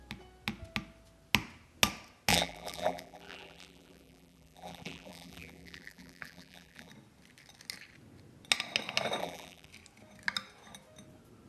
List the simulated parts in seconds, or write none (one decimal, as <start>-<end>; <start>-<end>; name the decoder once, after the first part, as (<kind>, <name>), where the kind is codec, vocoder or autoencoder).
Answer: 2.3-6.9 (vocoder, BigVGAN v2); 9.2-9.7

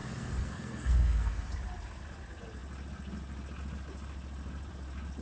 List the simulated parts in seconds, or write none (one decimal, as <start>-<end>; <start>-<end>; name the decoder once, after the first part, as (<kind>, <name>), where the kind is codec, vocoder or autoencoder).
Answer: 0.0-1.5 (codec, SNAC)

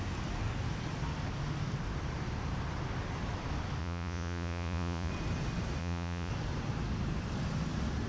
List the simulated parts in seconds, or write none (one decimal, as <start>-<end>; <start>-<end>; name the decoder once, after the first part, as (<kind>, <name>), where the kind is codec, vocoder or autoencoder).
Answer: 3.8-5.1 (vocoder, Vocos); 5.8-6.3

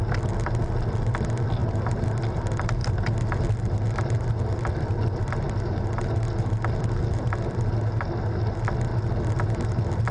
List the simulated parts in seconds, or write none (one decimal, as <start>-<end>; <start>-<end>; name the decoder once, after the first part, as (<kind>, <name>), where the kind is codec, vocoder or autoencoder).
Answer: none

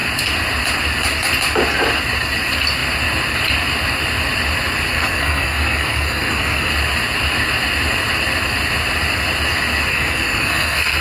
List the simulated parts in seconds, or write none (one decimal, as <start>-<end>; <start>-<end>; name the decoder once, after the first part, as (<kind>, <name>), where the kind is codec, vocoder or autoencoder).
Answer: 4.9-6.7 (codec, SNAC); 9.9-11.0